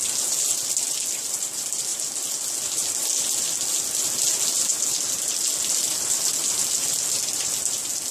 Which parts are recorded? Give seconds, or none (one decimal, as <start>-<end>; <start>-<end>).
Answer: 0.0-8.1